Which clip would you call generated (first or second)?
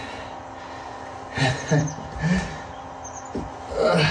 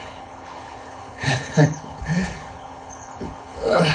second